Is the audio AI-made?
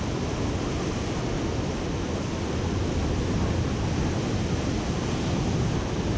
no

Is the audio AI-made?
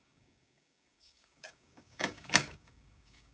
yes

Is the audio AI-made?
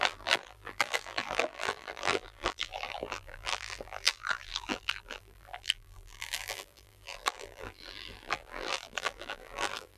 yes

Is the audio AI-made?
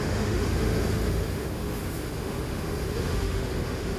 yes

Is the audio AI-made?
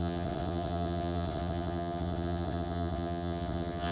yes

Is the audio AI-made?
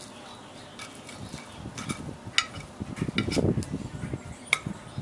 no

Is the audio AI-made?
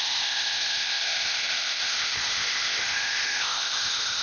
yes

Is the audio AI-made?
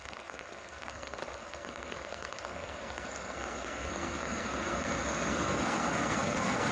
yes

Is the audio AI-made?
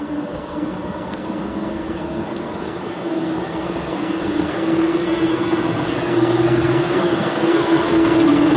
yes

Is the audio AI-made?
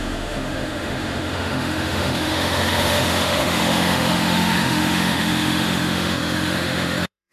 yes